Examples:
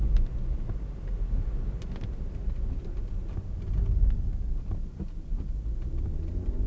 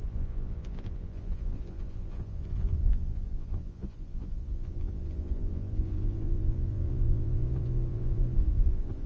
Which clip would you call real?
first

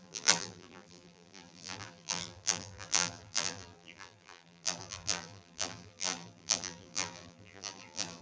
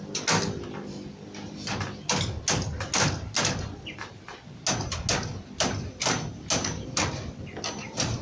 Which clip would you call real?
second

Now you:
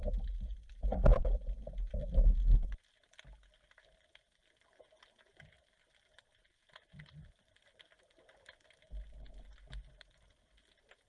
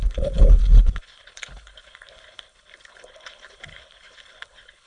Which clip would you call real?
first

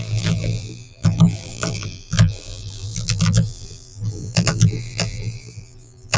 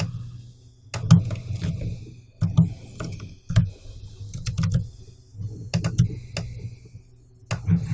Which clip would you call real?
second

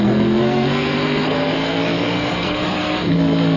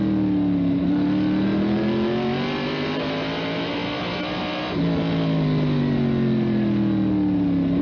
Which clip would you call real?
second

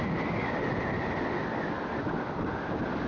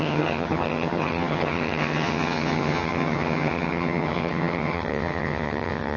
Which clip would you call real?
first